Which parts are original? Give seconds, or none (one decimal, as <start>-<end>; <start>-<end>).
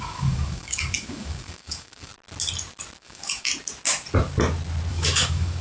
2.1-3.0; 3.5-4.9